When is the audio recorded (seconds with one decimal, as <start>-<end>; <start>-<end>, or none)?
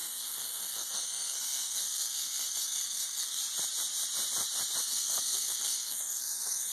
3.4-4.8